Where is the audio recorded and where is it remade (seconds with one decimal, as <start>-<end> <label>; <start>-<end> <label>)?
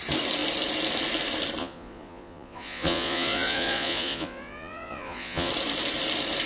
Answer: 0.0-1.6 recorded; 1.6-5.5 remade; 5.5-6.5 recorded